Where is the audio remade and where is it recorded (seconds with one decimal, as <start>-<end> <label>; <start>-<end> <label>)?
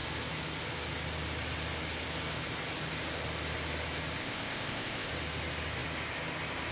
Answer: 0.0-4.2 recorded; 4.2-5.1 remade; 5.1-6.7 recorded